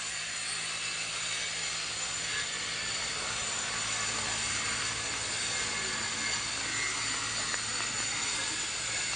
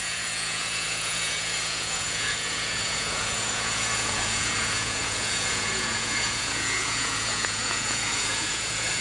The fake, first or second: second